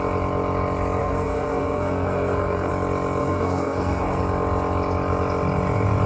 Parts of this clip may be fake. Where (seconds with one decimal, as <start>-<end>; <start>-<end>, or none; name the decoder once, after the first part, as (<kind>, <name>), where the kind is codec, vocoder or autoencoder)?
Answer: 1.0-2.7 (codec, SNAC); 3.2-4.2